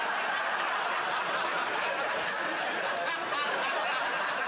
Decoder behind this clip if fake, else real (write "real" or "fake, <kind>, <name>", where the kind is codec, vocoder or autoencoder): real